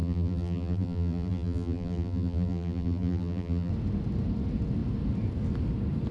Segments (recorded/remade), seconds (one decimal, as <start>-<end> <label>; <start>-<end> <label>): 0.0-3.7 remade; 3.7-6.1 recorded